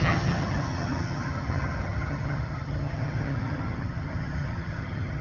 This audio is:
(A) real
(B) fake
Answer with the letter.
B